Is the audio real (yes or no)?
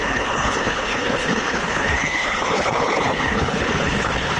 no